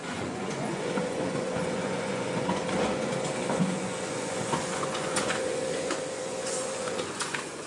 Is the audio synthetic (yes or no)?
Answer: yes